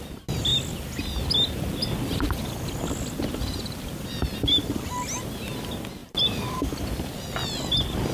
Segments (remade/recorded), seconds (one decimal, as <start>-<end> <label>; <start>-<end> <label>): 0.0-6.0 recorded; 6.0-6.7 remade; 6.7-8.1 recorded